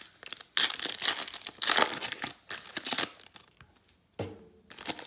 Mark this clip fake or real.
real